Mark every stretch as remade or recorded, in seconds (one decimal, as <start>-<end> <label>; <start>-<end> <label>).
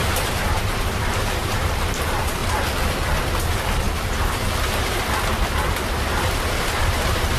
0.0-2.4 remade; 2.4-6.8 recorded; 6.8-7.4 remade